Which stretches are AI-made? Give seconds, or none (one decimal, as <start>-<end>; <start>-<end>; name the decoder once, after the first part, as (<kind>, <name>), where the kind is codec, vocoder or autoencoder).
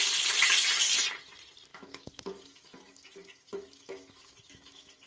1.7-5.1 (autoencoder, DAC-VAE)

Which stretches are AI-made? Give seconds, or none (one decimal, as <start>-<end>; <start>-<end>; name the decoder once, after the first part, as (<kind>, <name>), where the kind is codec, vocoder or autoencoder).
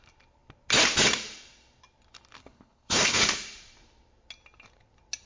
2.4-3.2 (codec, HILCodec)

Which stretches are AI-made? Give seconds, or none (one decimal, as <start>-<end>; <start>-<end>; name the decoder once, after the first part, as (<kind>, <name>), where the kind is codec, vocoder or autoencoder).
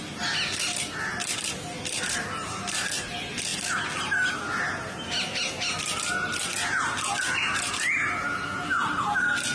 none